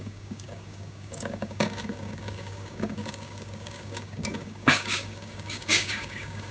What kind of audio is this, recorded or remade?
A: remade